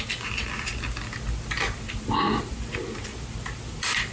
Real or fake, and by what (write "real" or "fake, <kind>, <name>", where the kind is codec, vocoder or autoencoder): real